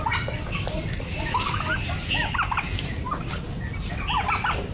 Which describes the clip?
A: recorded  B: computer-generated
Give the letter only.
A